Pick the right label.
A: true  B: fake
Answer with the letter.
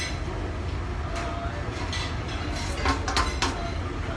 A